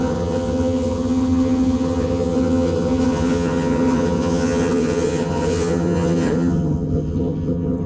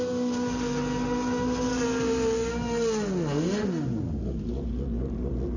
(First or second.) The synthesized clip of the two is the first